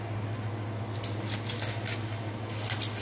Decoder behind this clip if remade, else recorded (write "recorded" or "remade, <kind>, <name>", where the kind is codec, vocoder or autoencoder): recorded